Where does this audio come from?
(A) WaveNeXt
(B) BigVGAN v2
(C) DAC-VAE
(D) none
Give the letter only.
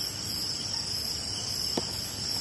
D